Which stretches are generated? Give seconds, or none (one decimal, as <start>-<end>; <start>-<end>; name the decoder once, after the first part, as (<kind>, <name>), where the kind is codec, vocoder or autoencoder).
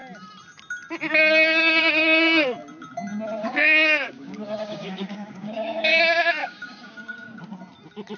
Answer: 3.4-6.0 (codec, DAC); 6.4-7.4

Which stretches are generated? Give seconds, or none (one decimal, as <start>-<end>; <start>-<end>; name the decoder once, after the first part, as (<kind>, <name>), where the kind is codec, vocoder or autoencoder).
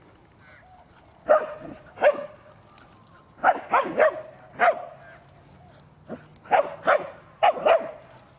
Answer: none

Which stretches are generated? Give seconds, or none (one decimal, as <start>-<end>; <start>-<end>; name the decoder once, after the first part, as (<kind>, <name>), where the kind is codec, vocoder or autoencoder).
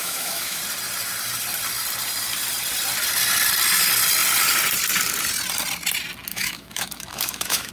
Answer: 0.0-0.6 (autoencoder, DAC-VAE); 6.3-7.7